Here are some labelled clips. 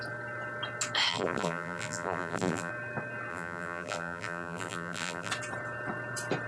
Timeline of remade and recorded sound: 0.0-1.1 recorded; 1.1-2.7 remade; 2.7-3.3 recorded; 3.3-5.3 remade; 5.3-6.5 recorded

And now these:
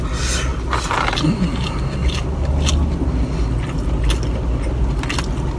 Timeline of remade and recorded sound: 0.0-5.6 recorded

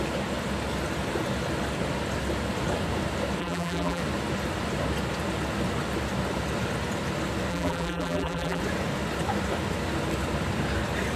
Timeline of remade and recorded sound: 0.0-3.4 recorded; 3.4-4.0 remade; 4.0-7.5 recorded; 7.5-8.6 remade; 8.6-11.2 recorded

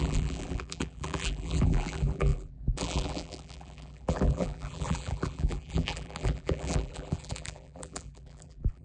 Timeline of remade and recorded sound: 0.0-8.8 remade

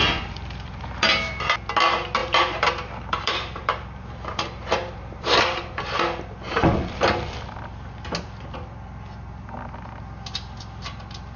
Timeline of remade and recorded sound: 0.0-1.5 remade; 1.5-2.2 recorded; 2.2-6.0 remade; 6.0-11.4 recorded